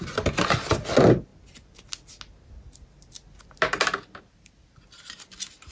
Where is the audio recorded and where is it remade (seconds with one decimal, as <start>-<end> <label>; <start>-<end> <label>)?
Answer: 0.0-5.7 recorded